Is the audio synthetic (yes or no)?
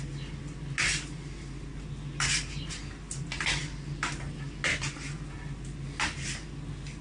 no